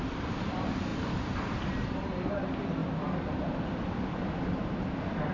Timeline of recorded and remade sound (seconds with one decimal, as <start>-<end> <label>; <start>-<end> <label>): 0.0-2.8 remade; 2.8-3.6 recorded; 3.6-5.3 remade